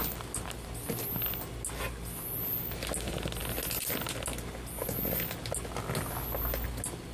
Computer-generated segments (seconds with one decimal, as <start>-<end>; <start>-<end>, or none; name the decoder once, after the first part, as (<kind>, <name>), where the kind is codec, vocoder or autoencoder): none